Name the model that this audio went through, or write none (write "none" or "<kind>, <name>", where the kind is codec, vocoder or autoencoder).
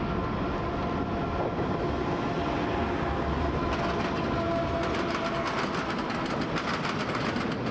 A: none